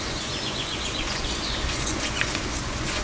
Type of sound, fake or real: fake